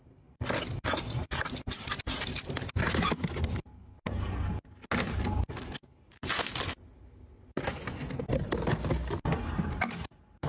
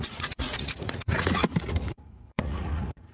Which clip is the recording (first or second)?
first